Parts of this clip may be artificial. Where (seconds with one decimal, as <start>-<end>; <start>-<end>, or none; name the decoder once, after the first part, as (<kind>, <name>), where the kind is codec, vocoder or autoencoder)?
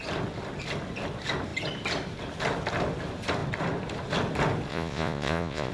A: 4.7-5.7 (vocoder, Vocos)